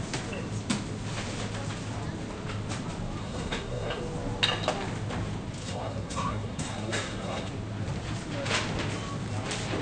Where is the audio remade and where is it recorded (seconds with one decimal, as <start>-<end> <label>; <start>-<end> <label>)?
0.0-3.2 recorded; 3.2-4.0 remade; 4.0-5.6 recorded; 5.6-7.5 remade; 7.5-9.8 recorded